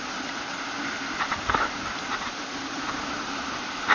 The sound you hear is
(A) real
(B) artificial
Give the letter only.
A